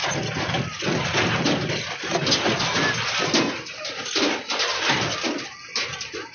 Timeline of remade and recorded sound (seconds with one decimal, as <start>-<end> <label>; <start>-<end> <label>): 0.0-6.3 recorded

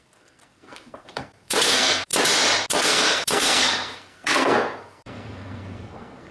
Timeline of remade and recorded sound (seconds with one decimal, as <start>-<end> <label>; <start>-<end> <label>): 0.0-2.1 remade; 2.1-2.7 recorded; 2.7-6.3 remade

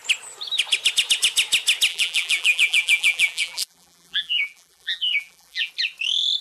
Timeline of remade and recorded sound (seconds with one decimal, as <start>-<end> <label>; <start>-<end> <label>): 0.0-1.9 recorded; 1.9-5.7 remade; 5.7-6.4 recorded

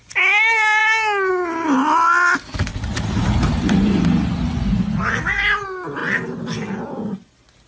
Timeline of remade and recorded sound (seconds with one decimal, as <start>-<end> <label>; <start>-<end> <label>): 0.0-2.7 recorded; 2.7-4.0 remade; 4.0-7.7 recorded

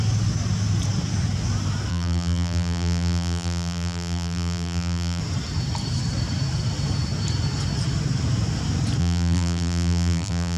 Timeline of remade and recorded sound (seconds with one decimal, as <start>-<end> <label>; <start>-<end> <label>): 0.0-1.9 recorded; 1.9-5.2 remade; 5.2-9.0 recorded; 9.0-10.6 remade

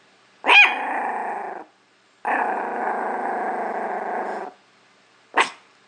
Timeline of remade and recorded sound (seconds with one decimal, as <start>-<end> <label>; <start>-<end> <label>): 0.0-5.9 recorded